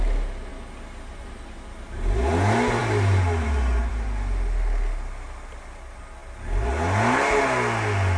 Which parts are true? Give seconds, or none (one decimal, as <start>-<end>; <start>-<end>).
0.0-2.8; 3.9-8.2